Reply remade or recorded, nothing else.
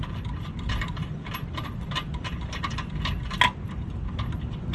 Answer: recorded